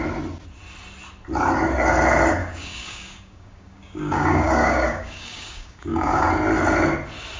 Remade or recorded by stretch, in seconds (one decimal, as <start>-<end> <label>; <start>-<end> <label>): 0.0-2.4 recorded; 2.4-6.3 remade; 6.3-7.4 recorded